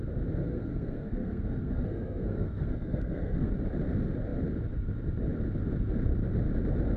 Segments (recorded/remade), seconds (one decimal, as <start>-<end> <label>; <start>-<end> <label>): 0.0-0.4 recorded; 0.4-3.5 remade; 3.5-7.0 recorded